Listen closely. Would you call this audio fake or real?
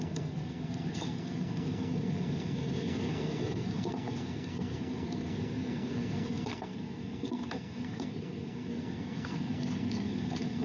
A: fake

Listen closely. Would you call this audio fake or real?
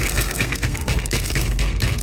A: fake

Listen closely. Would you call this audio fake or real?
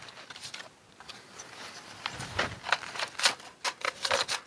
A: real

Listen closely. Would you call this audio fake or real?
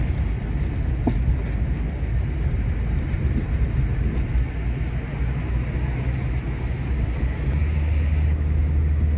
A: real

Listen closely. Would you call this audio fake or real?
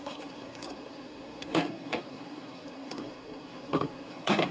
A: fake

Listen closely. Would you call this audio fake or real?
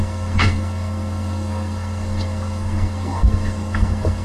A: fake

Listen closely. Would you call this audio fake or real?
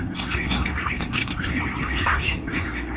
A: fake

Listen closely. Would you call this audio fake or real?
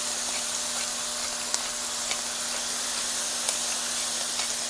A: real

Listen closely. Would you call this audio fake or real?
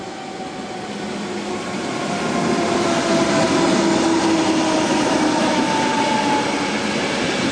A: real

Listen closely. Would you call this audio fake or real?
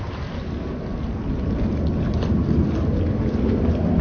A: real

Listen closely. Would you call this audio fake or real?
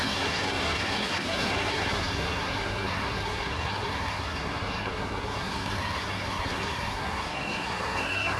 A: fake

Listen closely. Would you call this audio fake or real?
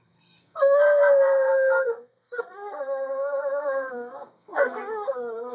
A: fake